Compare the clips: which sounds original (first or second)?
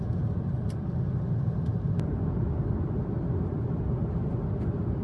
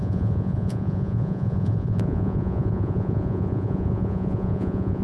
first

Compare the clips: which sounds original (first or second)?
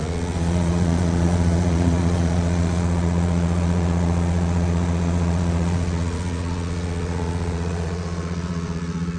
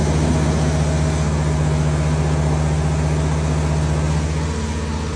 second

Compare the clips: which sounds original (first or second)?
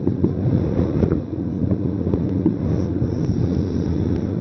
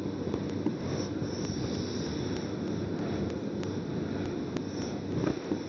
second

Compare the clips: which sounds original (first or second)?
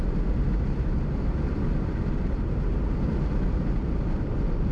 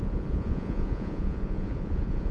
first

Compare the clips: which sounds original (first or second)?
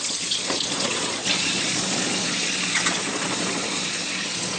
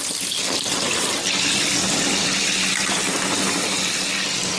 second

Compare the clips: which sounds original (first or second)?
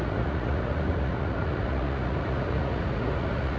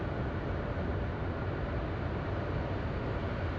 second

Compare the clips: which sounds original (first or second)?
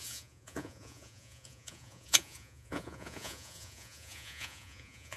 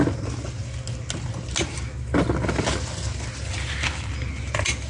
second